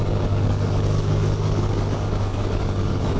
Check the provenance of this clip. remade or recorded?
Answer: remade